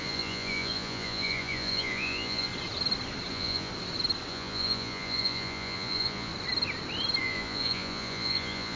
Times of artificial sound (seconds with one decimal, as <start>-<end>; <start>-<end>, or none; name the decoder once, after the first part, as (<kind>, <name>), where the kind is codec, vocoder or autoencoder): 0.0-2.5 (vocoder, Vocos); 3.3-3.7; 4.3-6.3; 7.2-8.8